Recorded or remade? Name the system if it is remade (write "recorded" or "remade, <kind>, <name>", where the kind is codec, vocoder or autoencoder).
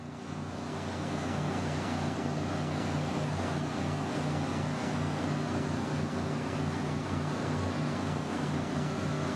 remade, codec, SNAC